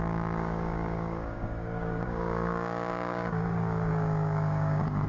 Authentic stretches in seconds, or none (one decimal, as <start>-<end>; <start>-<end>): none